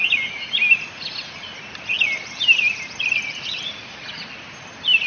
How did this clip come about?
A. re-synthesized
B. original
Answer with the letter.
B